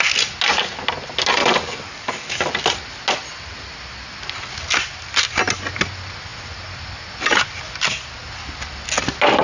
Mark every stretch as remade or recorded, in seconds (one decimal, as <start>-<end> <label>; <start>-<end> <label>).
0.0-1.4 recorded; 1.4-2.5 remade; 2.5-9.4 recorded